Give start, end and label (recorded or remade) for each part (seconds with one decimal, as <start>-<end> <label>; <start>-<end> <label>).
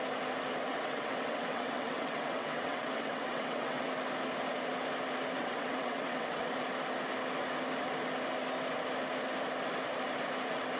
0.0-0.7 recorded; 0.7-3.9 remade; 3.9-5.4 recorded; 5.4-6.5 remade; 6.5-10.8 recorded